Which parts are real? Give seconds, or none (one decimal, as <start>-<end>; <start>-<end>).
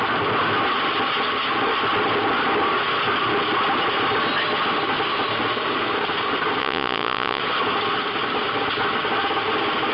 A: 0.0-6.6; 7.4-9.9